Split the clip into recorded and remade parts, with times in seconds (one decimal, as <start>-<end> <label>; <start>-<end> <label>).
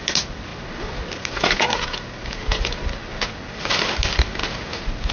0.0-0.5 remade; 0.5-3.6 recorded; 3.6-4.4 remade; 4.4-5.1 recorded